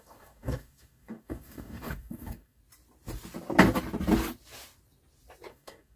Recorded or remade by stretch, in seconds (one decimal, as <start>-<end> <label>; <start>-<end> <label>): 0.0-2.6 remade; 2.6-5.5 recorded; 5.5-6.0 remade